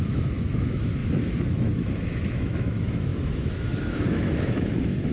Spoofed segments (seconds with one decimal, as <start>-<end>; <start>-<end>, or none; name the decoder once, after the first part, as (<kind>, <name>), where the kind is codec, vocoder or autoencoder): 0.0-1.0 (autoencoder, DAC-VAE); 1.5-5.1